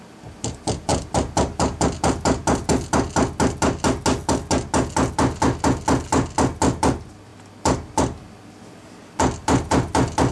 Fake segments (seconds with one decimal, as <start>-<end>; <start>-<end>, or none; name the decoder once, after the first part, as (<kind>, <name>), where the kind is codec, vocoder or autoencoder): none